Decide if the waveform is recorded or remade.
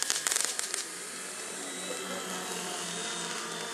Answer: recorded